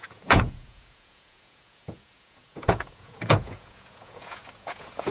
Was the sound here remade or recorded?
remade